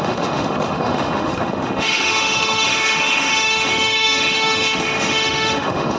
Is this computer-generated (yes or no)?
yes